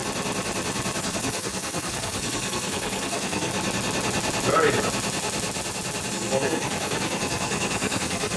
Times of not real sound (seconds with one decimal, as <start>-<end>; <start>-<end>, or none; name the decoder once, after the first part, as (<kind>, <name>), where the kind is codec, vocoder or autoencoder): 1.0-3.5 (codec, SNAC); 6.1-8.4